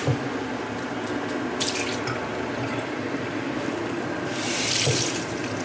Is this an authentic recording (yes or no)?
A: yes